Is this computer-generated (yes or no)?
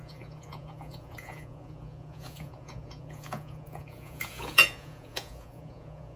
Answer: yes